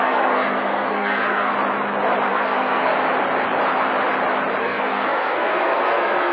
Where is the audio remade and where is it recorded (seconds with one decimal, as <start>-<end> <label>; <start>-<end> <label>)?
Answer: 0.0-1.5 remade; 1.5-2.3 recorded; 2.3-2.9 remade; 2.9-4.6 recorded; 4.6-6.3 remade

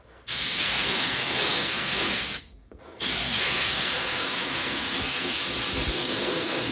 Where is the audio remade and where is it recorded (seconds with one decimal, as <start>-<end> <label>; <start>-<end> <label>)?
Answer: 0.0-5.4 remade; 5.4-5.9 recorded; 5.9-6.7 remade